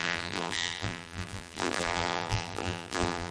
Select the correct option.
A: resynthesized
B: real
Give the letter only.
A